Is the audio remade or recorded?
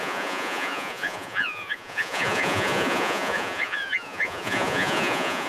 remade